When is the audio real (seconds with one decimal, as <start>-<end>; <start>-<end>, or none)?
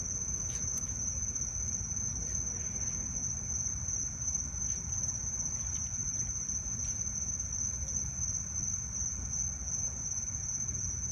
0.0-6.0; 8.8-11.1